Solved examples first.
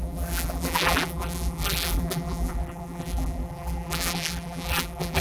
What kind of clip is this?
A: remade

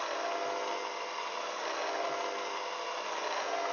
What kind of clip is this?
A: recorded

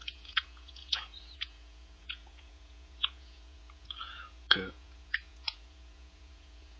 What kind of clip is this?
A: remade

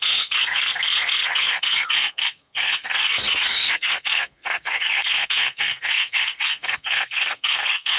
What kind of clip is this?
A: remade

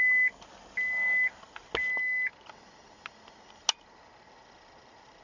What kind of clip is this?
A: recorded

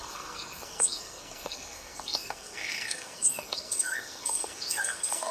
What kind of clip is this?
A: remade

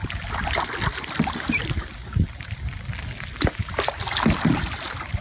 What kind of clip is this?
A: recorded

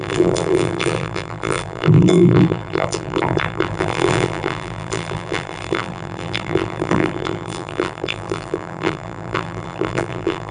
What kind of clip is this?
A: remade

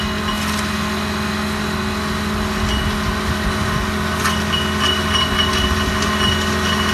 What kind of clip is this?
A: recorded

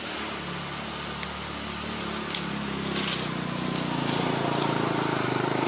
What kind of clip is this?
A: recorded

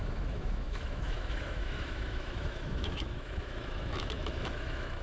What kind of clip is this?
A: remade